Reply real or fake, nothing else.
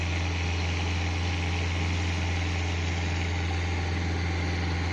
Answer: real